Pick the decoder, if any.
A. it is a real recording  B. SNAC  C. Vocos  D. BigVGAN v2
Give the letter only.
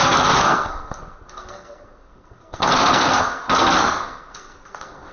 B